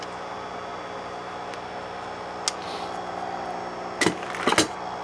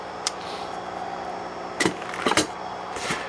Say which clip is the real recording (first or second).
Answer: first